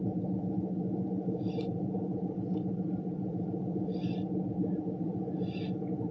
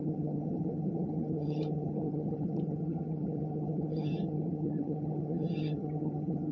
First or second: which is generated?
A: second